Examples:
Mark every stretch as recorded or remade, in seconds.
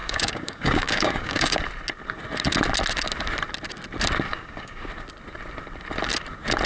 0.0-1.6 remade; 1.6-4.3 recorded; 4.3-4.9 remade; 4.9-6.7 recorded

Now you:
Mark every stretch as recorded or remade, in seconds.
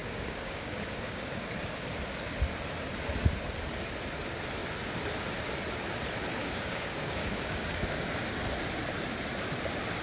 0.0-1.5 remade; 1.5-6.4 recorded; 6.4-7.8 remade; 7.8-10.0 recorded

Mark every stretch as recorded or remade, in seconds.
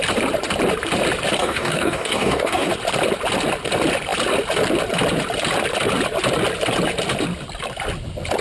0.0-1.4 recorded; 1.4-2.7 remade; 2.7-8.4 recorded